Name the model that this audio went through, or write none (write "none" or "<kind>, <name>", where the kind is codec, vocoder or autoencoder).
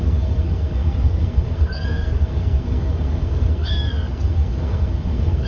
codec, SNAC